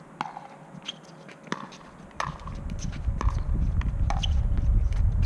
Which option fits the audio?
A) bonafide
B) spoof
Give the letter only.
A